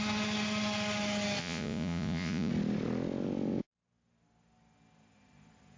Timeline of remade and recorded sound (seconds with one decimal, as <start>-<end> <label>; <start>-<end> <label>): 0.0-1.4 recorded; 1.4-2.5 remade; 2.5-5.8 recorded